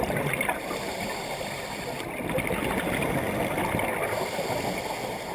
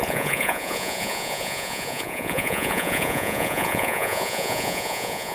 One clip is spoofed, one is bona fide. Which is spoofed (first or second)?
second